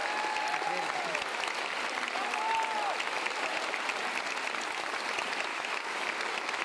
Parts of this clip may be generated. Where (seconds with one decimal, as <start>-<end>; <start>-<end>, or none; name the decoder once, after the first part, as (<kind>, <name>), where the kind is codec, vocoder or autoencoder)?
5.5-6.1 (autoencoder, DAC-VAE)